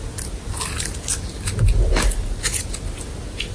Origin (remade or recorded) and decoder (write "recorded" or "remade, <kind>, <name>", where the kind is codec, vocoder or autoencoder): recorded